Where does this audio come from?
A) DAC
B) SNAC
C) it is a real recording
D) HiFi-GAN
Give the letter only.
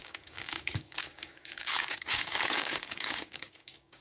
A